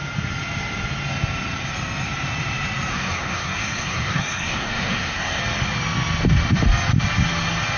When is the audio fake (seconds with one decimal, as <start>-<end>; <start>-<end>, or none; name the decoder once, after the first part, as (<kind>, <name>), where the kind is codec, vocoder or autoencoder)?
2.9-5.4 (codec, SNAC)